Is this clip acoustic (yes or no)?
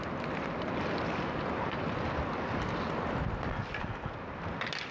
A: yes